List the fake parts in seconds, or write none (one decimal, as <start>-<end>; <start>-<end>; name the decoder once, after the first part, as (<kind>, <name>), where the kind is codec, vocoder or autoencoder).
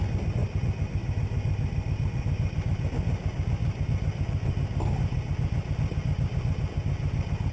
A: none